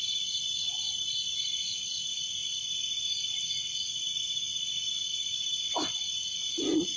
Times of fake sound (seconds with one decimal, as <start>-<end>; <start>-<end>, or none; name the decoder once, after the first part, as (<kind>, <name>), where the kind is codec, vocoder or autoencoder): none